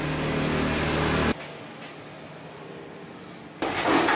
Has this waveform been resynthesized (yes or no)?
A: no